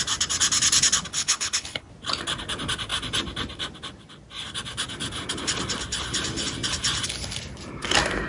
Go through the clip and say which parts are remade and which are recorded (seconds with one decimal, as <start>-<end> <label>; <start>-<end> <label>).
0.0-1.1 recorded; 1.1-1.9 remade; 1.9-8.3 recorded